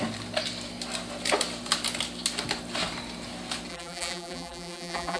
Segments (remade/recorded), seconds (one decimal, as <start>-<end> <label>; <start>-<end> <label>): 0.0-3.7 recorded; 3.7-5.2 remade